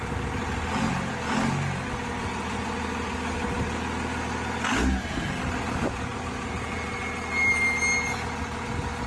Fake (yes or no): no